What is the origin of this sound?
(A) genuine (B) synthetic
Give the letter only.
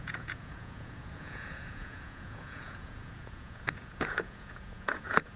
B